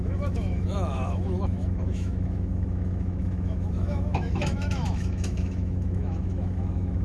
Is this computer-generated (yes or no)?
yes